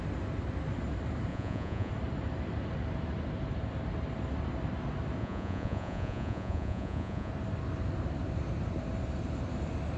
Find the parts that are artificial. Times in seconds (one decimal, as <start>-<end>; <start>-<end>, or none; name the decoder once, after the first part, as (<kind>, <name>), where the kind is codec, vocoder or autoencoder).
1.3-1.9 (vocoder, Vocos); 5.2-7.3